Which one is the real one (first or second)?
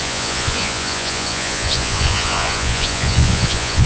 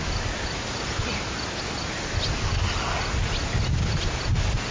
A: second